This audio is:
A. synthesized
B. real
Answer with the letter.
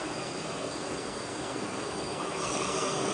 A